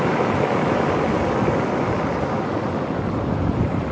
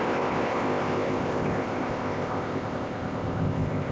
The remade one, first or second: second